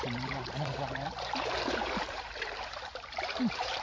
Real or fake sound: fake